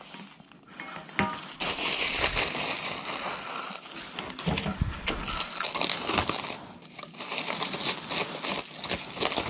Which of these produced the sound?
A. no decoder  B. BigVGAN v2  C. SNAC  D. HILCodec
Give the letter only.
A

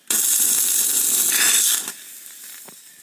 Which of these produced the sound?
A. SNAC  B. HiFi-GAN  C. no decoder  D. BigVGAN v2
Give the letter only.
C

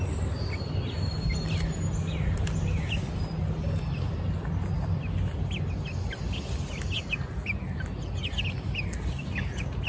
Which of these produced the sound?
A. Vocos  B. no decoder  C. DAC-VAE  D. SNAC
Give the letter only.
B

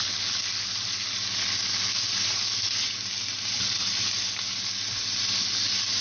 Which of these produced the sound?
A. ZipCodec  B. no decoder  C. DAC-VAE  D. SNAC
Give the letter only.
B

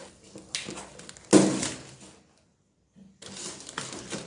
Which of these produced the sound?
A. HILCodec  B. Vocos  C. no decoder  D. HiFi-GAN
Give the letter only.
C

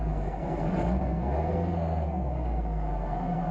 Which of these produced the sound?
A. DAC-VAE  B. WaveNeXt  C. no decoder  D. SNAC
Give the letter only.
D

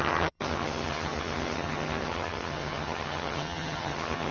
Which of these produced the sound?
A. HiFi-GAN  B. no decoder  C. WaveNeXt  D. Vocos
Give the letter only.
A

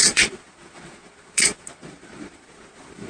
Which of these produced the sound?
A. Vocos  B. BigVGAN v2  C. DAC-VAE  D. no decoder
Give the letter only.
A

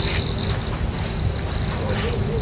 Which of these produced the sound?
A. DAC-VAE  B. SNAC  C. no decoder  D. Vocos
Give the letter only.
C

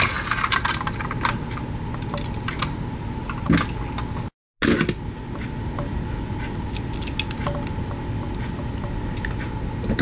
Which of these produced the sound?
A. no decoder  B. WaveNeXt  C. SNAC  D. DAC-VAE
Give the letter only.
A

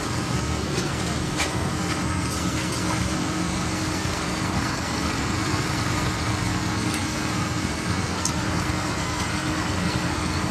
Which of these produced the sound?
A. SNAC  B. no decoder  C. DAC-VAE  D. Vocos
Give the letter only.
A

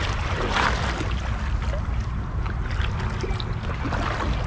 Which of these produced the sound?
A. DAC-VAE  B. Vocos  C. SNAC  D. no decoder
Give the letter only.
D